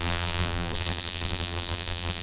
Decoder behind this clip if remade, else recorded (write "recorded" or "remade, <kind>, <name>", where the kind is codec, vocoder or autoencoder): remade, vocoder, BigVGAN v2